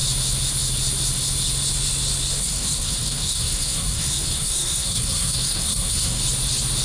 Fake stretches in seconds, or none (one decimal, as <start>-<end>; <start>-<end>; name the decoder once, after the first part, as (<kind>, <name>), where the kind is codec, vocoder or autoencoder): 2.4-6.2 (codec, SNAC)